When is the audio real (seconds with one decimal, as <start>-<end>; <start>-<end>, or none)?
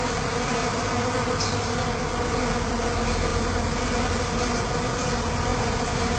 0.0-5.5